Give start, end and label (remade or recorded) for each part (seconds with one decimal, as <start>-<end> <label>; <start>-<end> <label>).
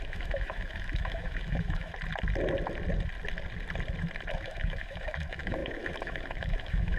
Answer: 0.0-1.9 remade; 1.9-4.3 recorded; 4.3-7.0 remade